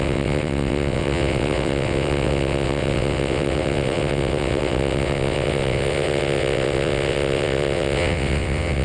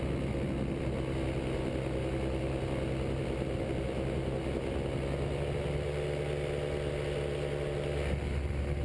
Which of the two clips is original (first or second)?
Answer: second